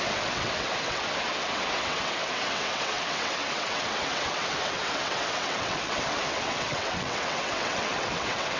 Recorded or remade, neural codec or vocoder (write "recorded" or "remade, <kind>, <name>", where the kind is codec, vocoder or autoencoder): remade, vocoder, WaveNeXt